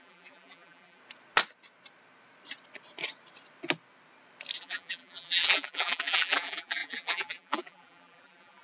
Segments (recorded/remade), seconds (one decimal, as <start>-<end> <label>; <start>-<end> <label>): 0.0-1.0 remade; 1.0-4.6 recorded; 4.6-8.6 remade